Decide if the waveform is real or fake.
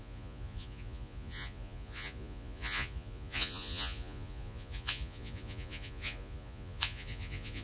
fake